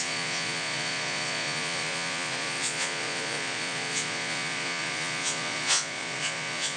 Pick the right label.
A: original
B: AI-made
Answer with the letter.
B